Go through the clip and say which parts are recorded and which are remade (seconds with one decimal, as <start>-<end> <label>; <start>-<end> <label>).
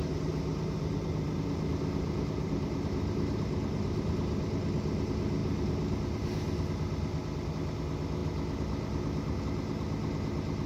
0.0-10.7 recorded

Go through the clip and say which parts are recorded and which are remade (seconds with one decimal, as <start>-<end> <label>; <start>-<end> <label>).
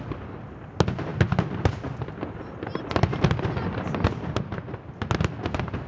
0.0-5.9 recorded